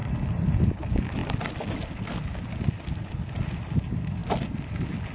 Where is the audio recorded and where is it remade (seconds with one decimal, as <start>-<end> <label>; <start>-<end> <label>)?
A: 0.0-5.1 recorded